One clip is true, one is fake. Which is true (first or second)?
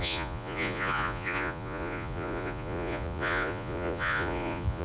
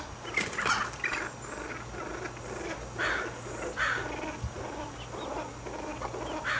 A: second